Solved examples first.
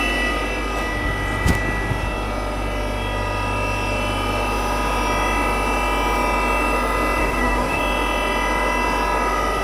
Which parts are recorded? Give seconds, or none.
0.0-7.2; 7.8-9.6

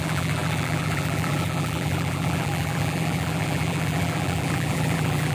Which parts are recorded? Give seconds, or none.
none

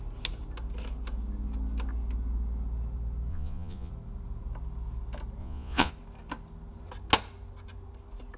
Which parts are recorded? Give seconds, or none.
0.0-3.3; 3.9-5.4; 5.9-8.4

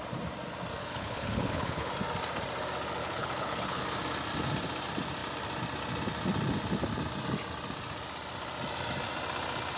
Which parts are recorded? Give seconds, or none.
0.0-0.8; 1.9-3.0; 3.8-9.8

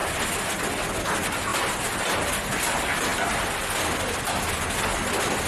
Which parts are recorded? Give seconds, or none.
0.6-5.5

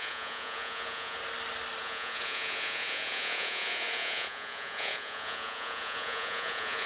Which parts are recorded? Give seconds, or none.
1.2-1.8

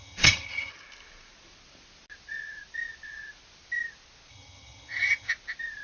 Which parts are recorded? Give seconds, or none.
0.7-4.3; 5.3-5.8